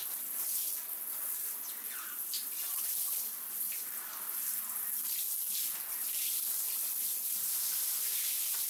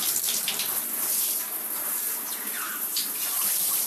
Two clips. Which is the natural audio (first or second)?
first